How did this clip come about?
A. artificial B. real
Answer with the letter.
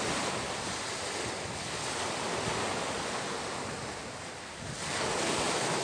B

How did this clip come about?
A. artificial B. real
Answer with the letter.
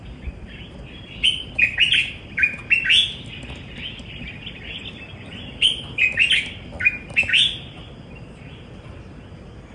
B